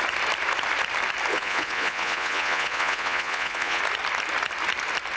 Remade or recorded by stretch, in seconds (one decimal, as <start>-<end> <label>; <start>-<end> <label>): 0.0-1.3 recorded; 1.3-3.8 remade; 3.8-5.2 recorded